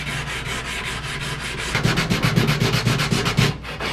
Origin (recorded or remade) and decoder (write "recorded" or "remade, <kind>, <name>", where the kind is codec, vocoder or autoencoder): recorded